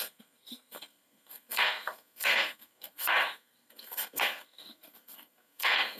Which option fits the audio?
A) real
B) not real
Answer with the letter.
B